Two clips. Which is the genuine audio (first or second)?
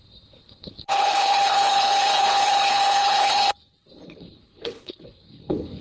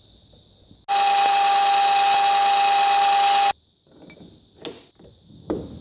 second